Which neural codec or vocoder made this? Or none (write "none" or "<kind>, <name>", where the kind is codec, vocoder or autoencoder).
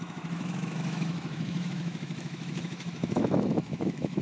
autoencoder, DAC-VAE